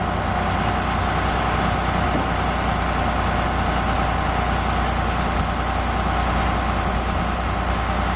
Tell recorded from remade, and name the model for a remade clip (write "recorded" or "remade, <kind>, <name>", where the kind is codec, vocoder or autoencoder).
recorded